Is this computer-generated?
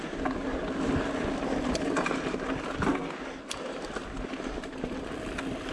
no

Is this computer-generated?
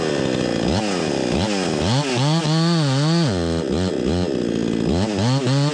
no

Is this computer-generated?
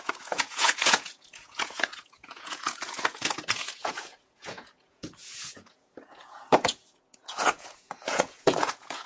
yes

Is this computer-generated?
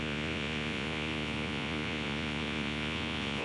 yes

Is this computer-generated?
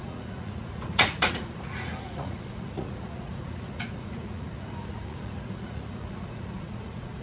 yes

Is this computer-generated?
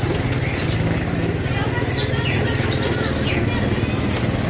no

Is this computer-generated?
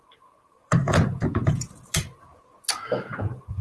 yes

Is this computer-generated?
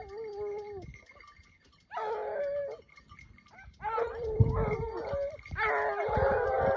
no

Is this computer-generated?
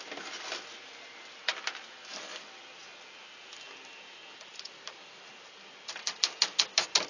no